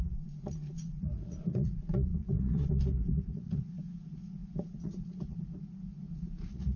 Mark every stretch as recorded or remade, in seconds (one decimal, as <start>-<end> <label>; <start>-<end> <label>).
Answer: 0.0-6.8 remade